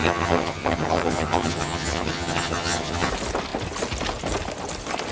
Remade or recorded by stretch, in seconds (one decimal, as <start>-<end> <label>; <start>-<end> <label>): 0.0-3.1 remade; 3.1-5.1 recorded